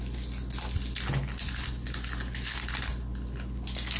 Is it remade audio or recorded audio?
recorded